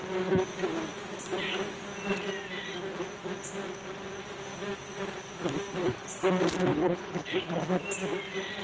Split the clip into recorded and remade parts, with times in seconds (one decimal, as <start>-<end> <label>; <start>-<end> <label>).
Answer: 0.0-5.8 recorded; 5.8-6.3 remade; 6.3-6.7 recorded; 6.7-7.6 remade; 7.6-8.6 recorded